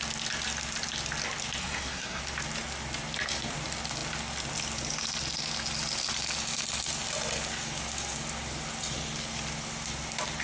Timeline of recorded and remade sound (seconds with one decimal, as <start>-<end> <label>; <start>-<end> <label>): 0.0-1.6 recorded; 1.6-2.2 remade; 2.2-10.4 recorded